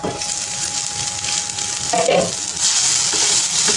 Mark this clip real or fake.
real